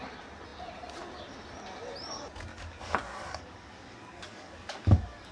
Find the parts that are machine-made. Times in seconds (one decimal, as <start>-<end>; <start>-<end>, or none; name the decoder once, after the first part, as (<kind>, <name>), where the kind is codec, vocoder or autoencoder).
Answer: 2.5-5.3 (codec, DAC)